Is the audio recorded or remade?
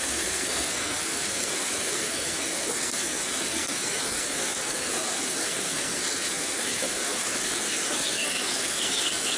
remade